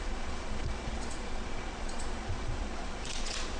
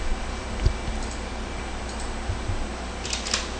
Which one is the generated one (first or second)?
first